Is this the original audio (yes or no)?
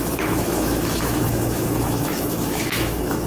no